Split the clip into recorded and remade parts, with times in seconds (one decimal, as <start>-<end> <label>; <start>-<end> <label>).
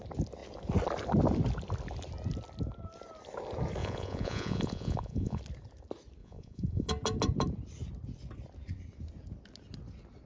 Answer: 0.0-3.8 recorded; 3.8-5.4 remade; 5.4-6.2 recorded; 6.2-6.9 remade; 6.9-10.3 recorded